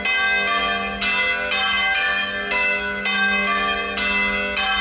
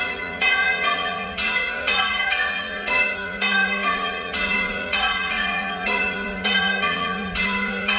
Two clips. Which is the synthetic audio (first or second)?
second